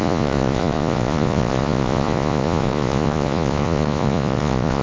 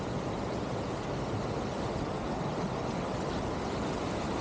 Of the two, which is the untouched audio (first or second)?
second